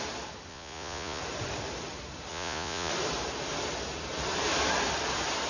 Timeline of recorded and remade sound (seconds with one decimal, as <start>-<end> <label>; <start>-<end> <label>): 0.0-0.5 recorded; 0.5-1.2 remade; 1.2-2.3 recorded; 2.3-2.9 remade; 2.9-5.5 recorded